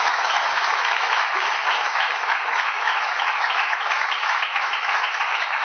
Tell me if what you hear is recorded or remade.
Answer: remade